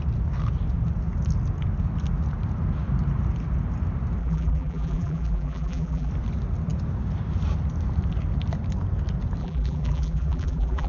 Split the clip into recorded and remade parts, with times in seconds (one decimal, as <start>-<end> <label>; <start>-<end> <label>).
0.0-4.2 recorded; 4.2-6.1 remade; 6.1-9.4 recorded; 9.4-10.9 remade

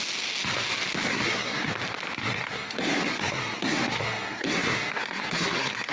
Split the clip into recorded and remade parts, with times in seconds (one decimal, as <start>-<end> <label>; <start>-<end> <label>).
0.0-1.1 recorded; 1.1-1.7 remade; 1.7-2.2 recorded; 2.2-5.9 remade